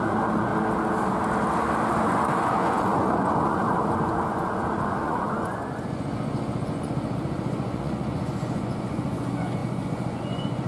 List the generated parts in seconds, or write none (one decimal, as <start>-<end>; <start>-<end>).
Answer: 0.0-0.5; 2.0-10.7